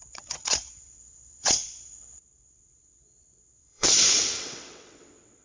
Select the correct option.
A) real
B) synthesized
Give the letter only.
B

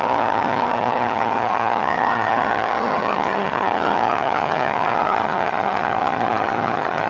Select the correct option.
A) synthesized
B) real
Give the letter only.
A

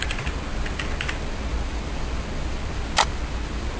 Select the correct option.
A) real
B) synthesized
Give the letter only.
A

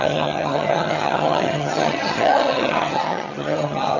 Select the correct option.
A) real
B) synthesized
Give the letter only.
B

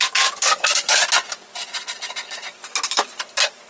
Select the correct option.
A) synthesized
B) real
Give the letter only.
B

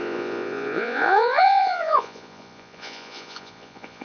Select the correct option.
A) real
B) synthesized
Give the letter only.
B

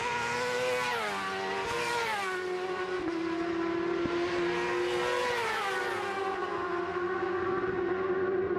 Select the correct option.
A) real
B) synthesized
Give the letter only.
A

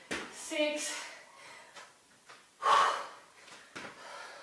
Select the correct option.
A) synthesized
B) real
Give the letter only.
B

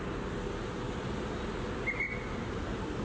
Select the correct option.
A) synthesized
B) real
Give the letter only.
B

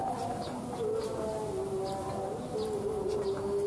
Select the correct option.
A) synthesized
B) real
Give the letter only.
B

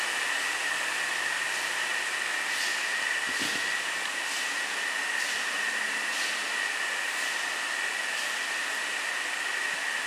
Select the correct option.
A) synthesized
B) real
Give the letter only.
B